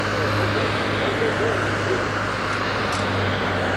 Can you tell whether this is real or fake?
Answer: real